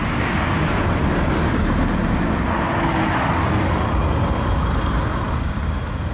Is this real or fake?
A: real